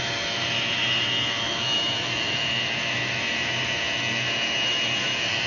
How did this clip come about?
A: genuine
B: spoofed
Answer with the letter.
B